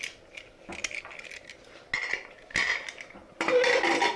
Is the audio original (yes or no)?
yes